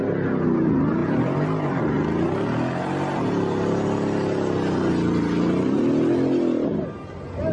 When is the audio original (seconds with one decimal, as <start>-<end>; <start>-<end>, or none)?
0.0-7.5